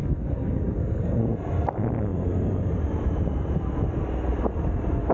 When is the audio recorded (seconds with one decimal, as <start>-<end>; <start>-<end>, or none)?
1.2-5.1